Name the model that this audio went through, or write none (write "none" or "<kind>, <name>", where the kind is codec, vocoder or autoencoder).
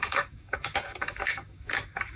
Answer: codec, DAC